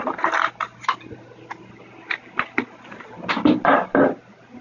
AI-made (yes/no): no